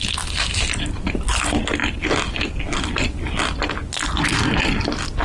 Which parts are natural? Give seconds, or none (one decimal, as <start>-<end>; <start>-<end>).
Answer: 0.0-5.2